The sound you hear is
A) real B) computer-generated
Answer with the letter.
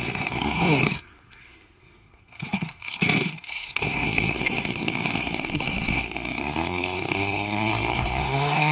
B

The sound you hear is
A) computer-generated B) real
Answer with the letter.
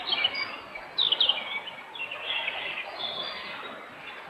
B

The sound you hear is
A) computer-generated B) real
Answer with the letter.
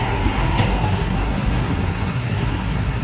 A